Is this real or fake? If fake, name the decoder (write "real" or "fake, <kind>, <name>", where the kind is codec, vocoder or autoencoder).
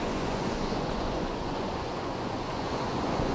fake, vocoder, Vocos